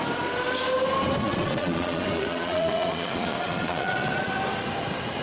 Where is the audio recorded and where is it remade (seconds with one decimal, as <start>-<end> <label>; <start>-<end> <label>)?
0.0-1.2 recorded; 1.2-4.3 remade; 4.3-5.2 recorded